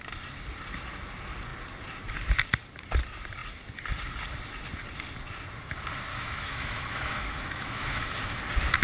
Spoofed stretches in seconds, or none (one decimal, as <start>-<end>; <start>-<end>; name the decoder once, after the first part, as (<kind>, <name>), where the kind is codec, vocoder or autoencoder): 6.1-8.4 (autoencoder, DAC-VAE)